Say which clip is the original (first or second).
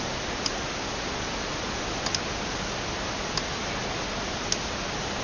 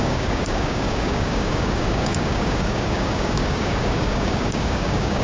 first